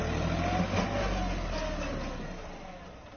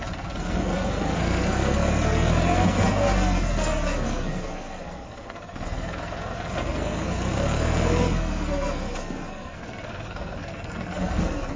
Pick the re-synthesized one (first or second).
second